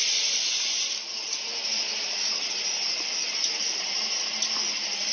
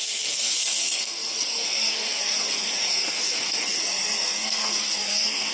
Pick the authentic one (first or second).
first